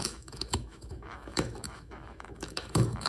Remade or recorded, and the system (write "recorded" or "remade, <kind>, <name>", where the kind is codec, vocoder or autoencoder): remade, autoencoder, DAC-VAE